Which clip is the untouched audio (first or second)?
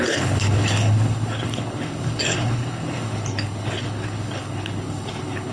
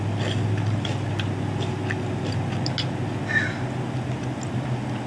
second